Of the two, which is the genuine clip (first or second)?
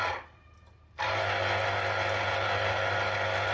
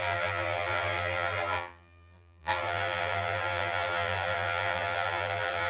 first